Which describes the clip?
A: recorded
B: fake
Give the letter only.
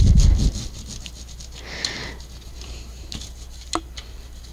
A